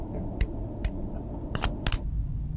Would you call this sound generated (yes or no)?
no